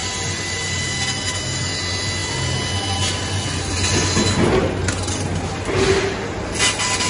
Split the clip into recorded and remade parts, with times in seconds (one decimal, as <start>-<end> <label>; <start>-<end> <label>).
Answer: 0.0-7.1 recorded